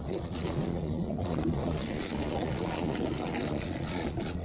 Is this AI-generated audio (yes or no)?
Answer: yes